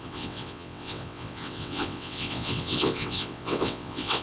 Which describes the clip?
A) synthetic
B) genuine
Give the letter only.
A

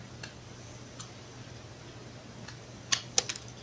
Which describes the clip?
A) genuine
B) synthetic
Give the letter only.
A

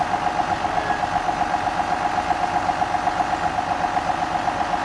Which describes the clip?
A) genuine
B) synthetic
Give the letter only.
A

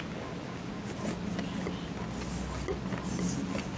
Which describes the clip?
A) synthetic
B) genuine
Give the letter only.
B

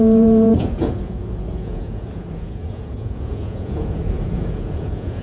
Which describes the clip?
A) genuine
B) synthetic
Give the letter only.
B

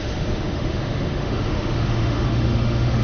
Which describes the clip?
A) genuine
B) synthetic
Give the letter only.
B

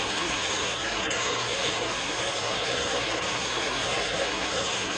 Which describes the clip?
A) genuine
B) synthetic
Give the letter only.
B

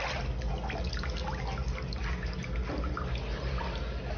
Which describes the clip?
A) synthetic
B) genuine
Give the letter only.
B